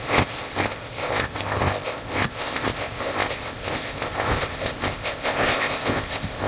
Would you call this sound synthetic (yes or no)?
yes